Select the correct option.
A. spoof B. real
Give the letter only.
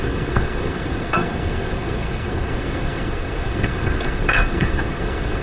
A